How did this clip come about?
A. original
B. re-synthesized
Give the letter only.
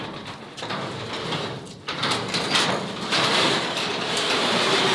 B